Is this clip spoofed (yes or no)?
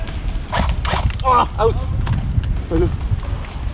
no